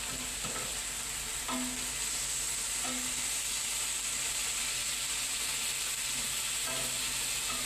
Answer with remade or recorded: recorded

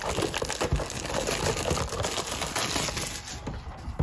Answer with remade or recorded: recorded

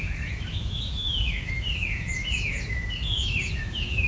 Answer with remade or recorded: remade